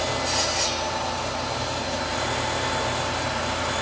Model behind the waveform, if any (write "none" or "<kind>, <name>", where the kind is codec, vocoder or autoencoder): none